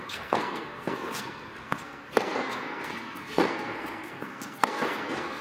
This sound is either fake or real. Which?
fake